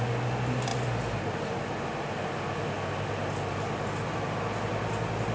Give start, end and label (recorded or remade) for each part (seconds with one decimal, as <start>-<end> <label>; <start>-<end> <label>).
0.0-5.3 recorded